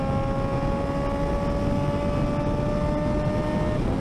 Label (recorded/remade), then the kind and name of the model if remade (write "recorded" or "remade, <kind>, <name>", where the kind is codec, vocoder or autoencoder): recorded